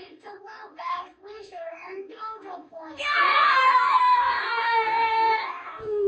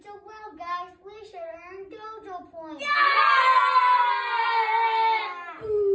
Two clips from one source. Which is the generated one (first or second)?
first